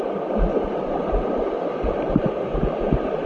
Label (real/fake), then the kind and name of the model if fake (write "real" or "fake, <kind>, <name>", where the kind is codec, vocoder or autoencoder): fake, vocoder, BigVGAN v2